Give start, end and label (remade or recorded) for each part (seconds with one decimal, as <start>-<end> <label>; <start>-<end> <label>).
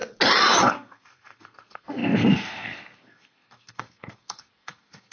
0.0-0.6 recorded; 0.6-5.1 remade